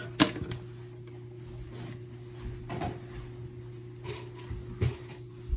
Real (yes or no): yes